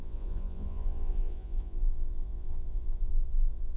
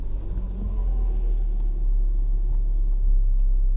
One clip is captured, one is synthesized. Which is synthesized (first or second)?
first